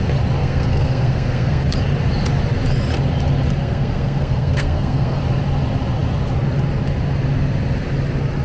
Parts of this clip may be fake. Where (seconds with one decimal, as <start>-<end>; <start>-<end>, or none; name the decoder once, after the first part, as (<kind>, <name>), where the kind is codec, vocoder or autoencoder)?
0.4-1.6 (codec, SNAC); 3.6-5.2